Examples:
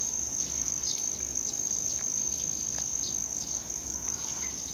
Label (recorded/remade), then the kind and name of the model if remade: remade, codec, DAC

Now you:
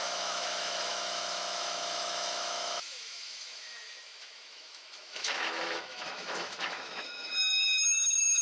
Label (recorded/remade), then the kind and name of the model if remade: remade, autoencoder, DAC-VAE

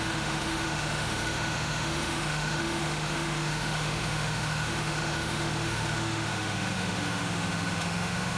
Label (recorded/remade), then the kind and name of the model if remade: remade, autoencoder, DAC-VAE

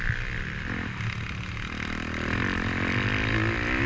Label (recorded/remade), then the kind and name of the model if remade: recorded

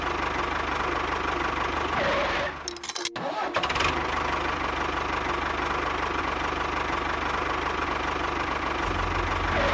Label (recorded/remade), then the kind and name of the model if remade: recorded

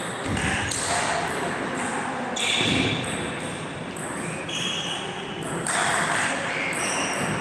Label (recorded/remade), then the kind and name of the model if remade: recorded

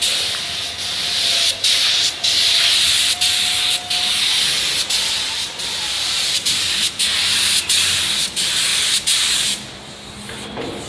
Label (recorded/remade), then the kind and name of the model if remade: recorded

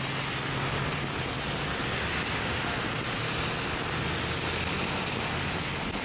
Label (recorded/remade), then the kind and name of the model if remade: recorded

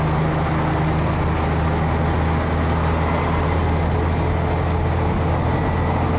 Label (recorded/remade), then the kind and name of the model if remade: recorded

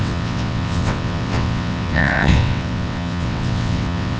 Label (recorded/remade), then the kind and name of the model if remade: remade, vocoder, WaveNeXt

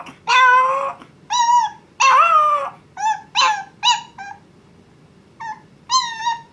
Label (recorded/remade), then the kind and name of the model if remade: recorded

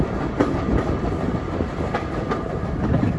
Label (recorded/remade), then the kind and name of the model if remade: recorded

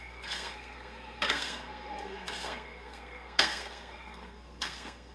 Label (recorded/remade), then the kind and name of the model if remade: remade, codec, SNAC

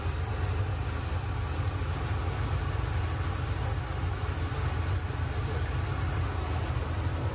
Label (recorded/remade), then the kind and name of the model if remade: recorded